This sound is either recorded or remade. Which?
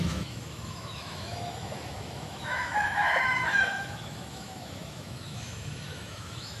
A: remade